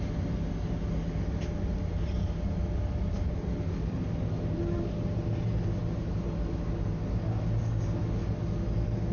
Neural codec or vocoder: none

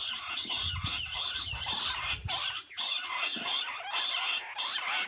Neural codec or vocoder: none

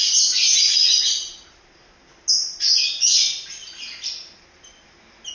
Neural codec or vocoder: none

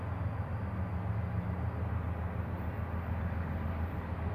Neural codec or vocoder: none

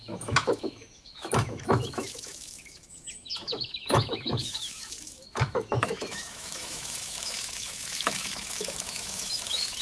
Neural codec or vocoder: autoencoder, DAC-VAE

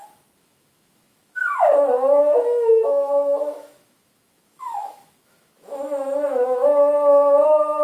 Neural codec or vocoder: autoencoder, DAC-VAE